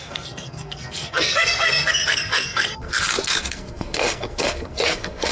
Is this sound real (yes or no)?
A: no